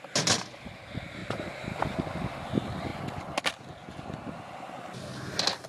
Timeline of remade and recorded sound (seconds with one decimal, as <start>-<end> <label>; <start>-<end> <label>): 0.0-1.2 recorded; 1.2-1.7 remade; 1.7-5.7 recorded